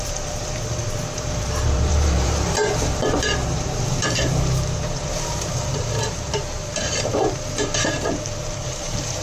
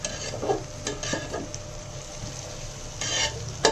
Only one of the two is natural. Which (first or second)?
second